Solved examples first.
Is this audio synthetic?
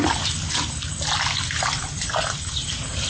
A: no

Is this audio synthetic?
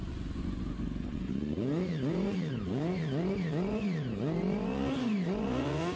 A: yes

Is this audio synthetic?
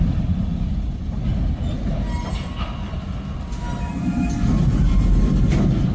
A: no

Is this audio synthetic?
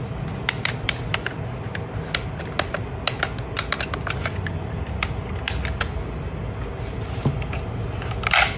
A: no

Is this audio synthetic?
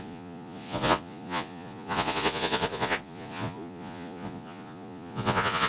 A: yes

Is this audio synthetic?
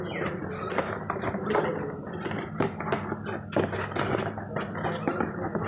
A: no